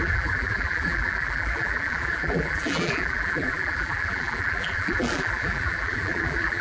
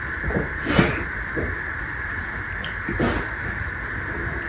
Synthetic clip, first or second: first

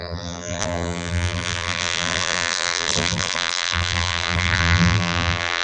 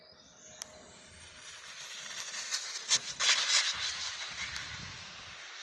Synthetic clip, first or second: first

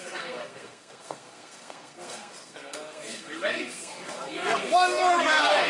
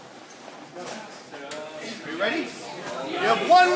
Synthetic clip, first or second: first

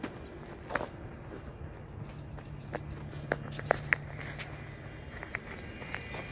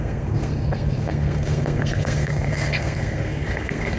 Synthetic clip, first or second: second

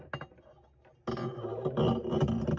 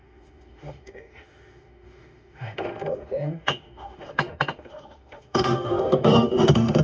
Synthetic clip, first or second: second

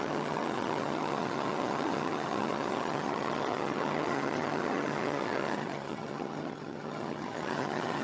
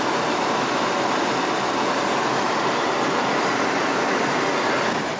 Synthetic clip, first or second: first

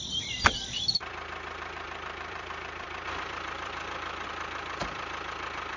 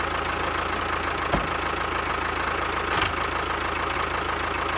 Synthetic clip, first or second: first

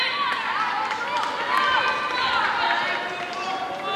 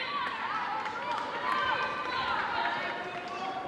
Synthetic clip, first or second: second